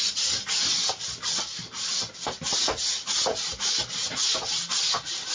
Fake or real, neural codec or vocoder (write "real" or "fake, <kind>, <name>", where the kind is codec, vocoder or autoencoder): real